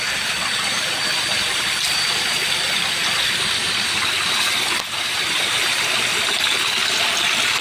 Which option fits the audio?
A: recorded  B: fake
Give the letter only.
A